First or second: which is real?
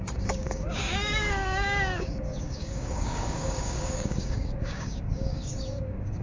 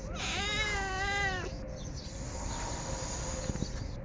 second